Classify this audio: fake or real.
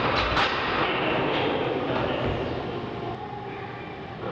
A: real